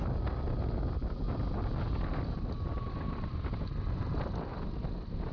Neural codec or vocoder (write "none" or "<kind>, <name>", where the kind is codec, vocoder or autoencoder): none